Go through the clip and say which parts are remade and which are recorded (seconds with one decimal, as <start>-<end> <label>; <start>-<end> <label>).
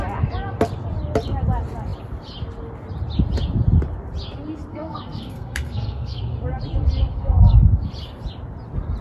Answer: 0.0-4.7 recorded; 4.7-6.2 remade; 6.2-7.1 recorded; 7.1-7.9 remade; 7.9-9.0 recorded